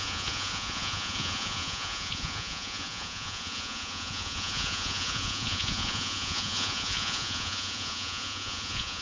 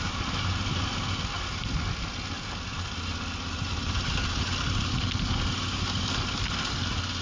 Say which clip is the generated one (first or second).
first